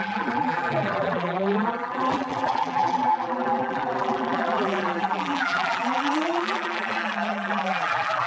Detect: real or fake fake